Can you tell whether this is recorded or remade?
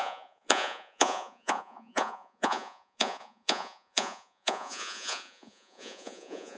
remade